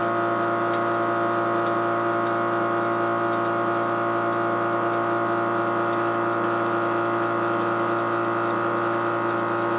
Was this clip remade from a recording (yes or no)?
no